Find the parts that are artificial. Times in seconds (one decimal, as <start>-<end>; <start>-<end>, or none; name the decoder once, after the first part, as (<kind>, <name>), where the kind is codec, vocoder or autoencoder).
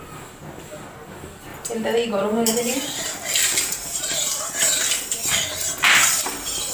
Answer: 1.5-4.4 (vocoder, BigVGAN v2)